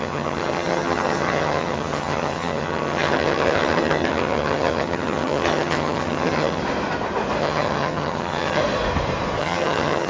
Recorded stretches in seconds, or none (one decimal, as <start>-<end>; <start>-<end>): 6.6-7.4; 8.6-9.4